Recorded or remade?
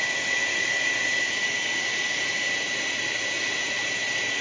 recorded